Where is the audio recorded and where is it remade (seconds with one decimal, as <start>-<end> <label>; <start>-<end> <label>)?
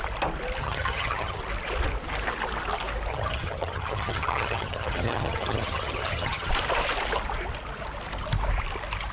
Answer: 0.0-0.6 recorded; 0.6-1.4 remade; 1.4-3.1 recorded; 3.1-6.5 remade; 6.5-9.1 recorded